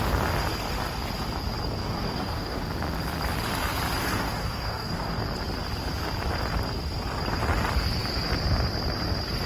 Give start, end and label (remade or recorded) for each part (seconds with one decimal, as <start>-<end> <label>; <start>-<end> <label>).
0.0-1.8 recorded; 1.8-2.6 remade; 2.6-4.0 recorded; 4.0-5.2 remade; 5.2-9.5 recorded